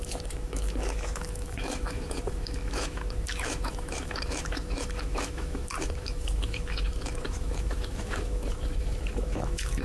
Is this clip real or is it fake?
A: fake